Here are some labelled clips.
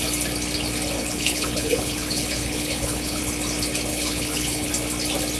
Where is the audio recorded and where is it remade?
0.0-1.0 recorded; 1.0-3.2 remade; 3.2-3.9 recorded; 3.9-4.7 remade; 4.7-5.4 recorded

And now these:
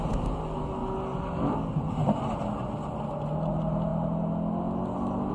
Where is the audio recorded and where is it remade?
0.0-5.3 recorded